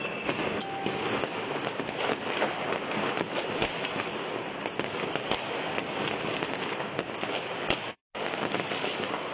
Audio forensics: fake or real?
real